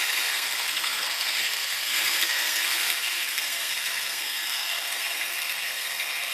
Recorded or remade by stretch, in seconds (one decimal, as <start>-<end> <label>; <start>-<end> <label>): 0.0-6.3 remade